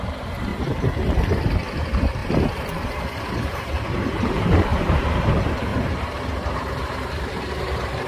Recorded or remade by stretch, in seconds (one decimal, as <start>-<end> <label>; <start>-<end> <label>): 0.0-0.5 remade; 0.5-1.2 recorded; 1.2-8.1 remade